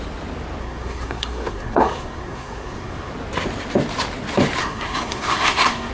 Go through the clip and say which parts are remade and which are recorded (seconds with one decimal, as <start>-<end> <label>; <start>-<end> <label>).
0.0-0.6 recorded; 0.6-3.1 remade; 3.1-4.6 recorded; 4.6-5.9 remade